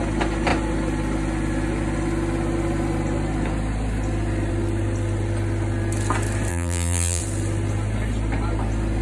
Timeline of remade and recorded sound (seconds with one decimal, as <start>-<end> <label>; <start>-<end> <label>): 0.0-6.5 recorded; 6.5-7.2 remade; 7.2-9.0 recorded